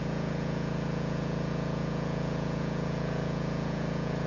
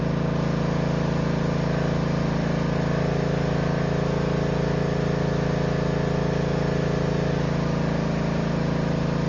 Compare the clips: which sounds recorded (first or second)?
second